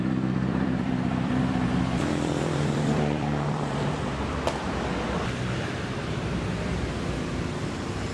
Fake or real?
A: fake